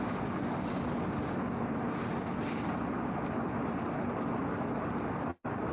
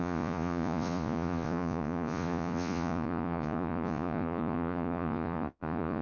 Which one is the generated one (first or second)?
second